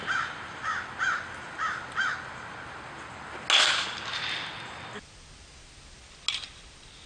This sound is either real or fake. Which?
real